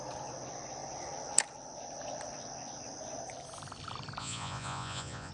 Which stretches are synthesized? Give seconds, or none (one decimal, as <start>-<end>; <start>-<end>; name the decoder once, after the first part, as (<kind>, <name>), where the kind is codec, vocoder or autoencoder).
4.2-5.3 (vocoder, Vocos)